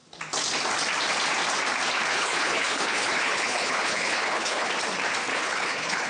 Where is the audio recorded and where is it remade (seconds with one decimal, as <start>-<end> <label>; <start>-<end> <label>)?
0.0-2.1 recorded; 2.1-4.7 remade; 4.7-5.3 recorded; 5.3-6.1 remade